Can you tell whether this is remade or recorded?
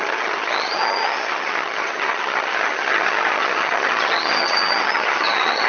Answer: remade